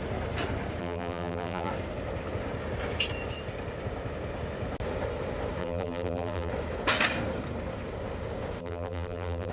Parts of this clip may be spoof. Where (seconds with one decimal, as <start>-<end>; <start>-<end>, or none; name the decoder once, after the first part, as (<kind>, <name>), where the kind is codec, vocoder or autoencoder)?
0.8-1.7 (vocoder, BigVGAN v2); 5.6-6.5; 8.6-9.5